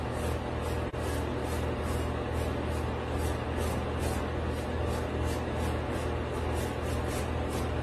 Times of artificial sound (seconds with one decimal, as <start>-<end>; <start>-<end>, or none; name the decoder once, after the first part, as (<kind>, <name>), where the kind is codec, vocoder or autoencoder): none